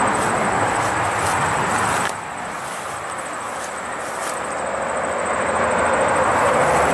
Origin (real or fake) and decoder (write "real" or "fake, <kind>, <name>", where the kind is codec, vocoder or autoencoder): real